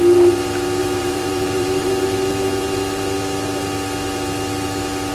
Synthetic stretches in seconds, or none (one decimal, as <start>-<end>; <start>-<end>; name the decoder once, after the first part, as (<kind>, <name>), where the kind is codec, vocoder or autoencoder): 0.8-1.9 (vocoder, BigVGAN v2)